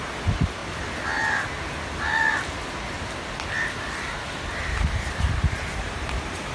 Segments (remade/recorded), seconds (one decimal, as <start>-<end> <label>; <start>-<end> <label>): 0.0-0.6 remade; 0.6-4.5 recorded; 4.5-6.5 remade